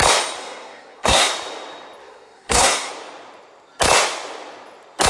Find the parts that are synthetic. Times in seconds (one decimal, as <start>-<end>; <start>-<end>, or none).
0.4-1.3; 2.0-2.9